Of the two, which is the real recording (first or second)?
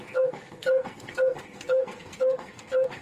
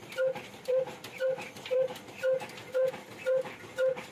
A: second